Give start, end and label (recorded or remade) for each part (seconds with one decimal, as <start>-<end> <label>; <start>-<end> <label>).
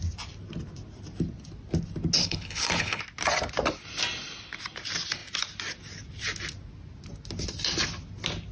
0.0-2.2 recorded; 2.2-3.0 remade; 3.0-8.5 recorded